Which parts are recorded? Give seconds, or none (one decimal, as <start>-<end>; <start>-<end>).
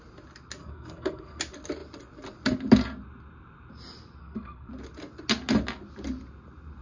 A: 0.0-0.6; 1.4-4.2; 4.7-6.8